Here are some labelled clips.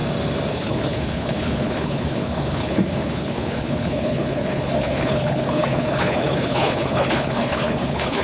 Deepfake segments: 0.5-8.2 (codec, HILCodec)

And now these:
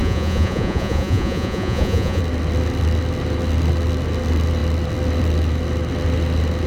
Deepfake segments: 0.0-2.2 (vocoder, Vocos)

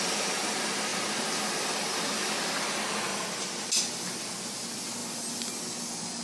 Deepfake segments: 3.1-3.7 (vocoder, BigVGAN v2)

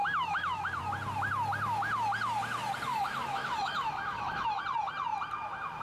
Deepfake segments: 0.0-0.8 (autoencoder, DAC-VAE); 2.9-4.6

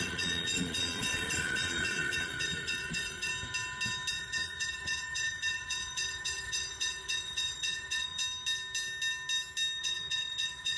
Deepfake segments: 0.0-3.3 (vocoder, Vocos); 4.1-8.2; 9.8-10.8

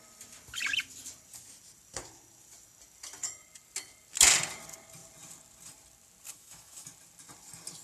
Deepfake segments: 6.3-6.9 (autoencoder, DAC-VAE)